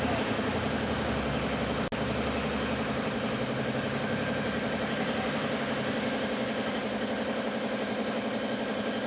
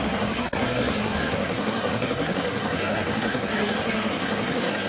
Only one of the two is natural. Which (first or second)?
first